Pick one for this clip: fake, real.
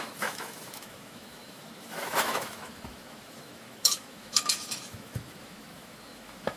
fake